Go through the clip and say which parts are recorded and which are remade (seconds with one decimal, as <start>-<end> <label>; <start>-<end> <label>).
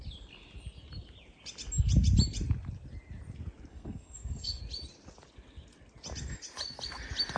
0.0-3.7 recorded; 3.7-4.6 remade; 4.6-7.4 recorded